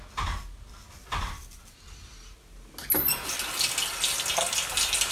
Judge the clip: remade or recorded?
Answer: recorded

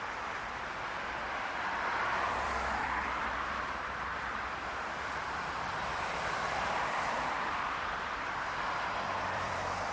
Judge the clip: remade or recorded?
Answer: remade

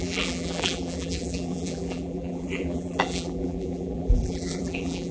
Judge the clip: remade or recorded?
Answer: remade